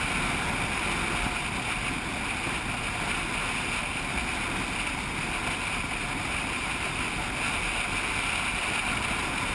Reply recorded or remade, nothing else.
recorded